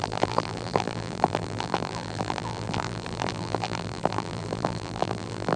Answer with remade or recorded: remade